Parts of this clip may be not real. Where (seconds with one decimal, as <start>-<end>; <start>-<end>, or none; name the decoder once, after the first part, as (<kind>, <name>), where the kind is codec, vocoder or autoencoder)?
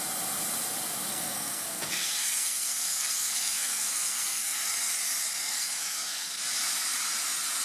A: 1.1-4.9 (codec, SNAC); 5.4-6.4